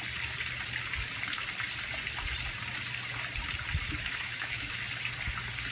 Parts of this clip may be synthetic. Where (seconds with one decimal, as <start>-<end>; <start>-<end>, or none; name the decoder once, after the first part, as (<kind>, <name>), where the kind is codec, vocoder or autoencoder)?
3.8-4.8 (autoencoder, DAC-VAE)